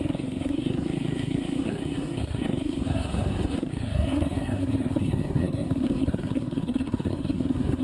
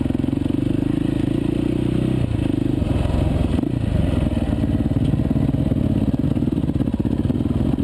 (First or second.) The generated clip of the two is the first